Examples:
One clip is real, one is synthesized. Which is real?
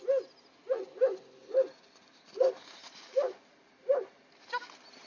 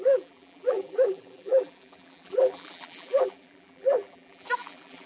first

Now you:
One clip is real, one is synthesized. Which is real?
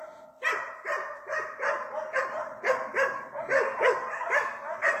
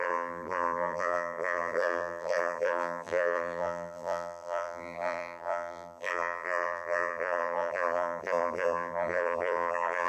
first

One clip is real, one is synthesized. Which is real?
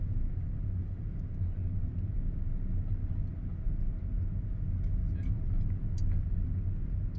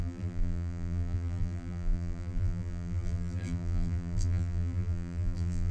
first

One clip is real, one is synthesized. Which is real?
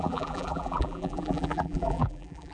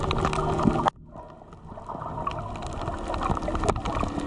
second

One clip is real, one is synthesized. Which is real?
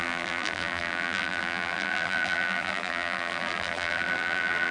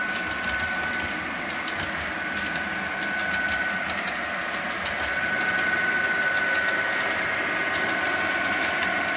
second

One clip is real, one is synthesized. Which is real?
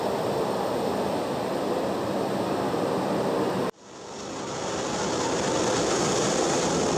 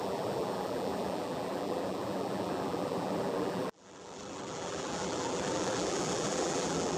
first